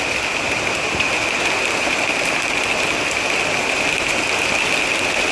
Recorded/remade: recorded